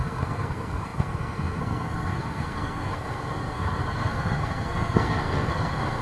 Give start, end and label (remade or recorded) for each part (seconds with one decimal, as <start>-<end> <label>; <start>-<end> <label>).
0.0-6.0 remade